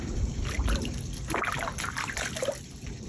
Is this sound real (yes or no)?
no